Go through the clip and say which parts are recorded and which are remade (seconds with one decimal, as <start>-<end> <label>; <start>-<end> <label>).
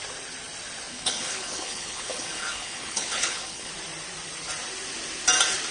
0.0-0.9 recorded; 0.9-3.7 remade; 3.7-5.7 recorded